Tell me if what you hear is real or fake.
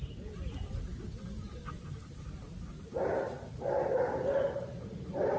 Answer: fake